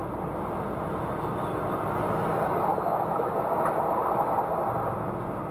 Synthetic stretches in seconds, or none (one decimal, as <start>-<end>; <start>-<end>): 2.7-3.3